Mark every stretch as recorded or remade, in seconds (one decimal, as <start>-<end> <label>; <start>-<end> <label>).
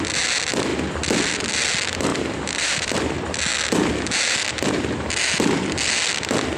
0.0-2.1 recorded; 2.1-3.0 remade; 3.0-6.6 recorded